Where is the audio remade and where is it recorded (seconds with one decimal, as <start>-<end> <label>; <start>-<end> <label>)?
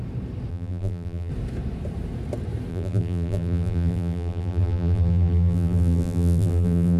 0.0-0.5 recorded; 0.5-1.3 remade; 1.3-2.7 recorded; 2.7-7.0 remade